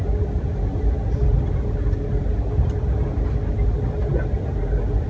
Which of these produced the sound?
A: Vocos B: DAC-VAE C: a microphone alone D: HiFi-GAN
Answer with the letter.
C